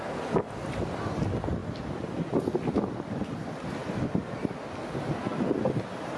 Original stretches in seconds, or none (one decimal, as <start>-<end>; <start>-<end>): 0.0-6.2